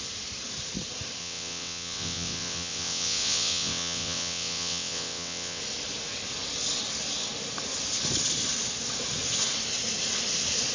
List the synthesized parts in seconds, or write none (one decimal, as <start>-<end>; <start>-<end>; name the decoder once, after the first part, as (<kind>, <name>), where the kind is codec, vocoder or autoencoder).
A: 1.2-5.6 (vocoder, WaveNeXt)